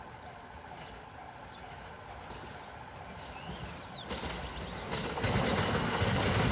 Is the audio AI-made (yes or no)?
no